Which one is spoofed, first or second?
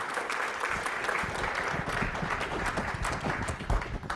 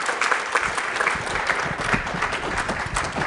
second